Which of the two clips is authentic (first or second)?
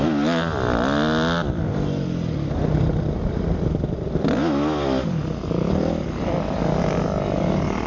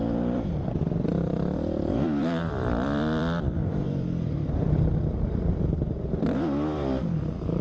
first